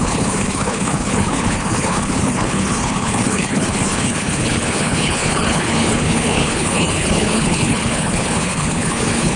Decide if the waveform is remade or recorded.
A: remade